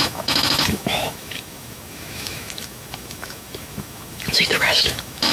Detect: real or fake fake